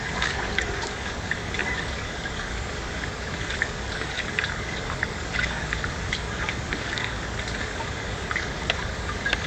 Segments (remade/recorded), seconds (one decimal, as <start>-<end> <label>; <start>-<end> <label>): 0.0-9.5 remade